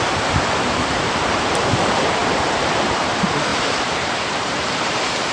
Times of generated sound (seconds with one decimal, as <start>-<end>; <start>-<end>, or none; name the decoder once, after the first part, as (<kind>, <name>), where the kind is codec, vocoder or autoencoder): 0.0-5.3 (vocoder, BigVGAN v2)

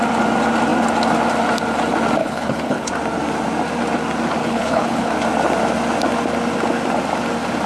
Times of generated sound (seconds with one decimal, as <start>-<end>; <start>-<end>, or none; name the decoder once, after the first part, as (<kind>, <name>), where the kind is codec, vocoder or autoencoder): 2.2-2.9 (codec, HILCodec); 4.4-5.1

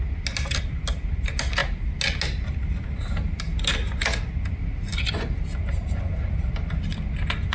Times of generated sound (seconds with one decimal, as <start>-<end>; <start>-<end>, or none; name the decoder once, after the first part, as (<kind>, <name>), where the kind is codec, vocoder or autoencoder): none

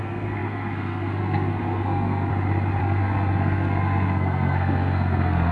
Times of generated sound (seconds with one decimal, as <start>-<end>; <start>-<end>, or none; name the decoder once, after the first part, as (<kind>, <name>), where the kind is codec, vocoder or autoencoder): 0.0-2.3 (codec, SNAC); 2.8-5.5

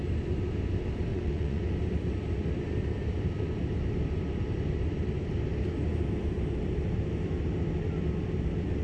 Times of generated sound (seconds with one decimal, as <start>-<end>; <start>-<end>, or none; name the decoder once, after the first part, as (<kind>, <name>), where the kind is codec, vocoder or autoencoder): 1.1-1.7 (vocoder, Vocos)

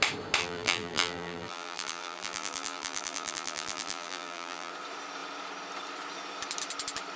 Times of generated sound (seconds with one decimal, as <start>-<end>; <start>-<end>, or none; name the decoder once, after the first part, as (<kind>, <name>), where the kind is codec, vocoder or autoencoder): 0.4-4.7 (vocoder, BigVGAN v2)

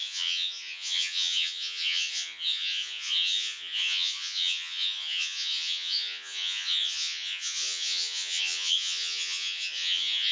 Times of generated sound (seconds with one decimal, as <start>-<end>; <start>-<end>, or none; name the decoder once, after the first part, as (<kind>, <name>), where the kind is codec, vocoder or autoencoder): 0.0-10.3 (vocoder, Vocos)